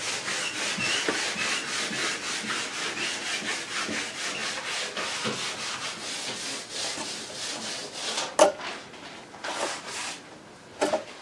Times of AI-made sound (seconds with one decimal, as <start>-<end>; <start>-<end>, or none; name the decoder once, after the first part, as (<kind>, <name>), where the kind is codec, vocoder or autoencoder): none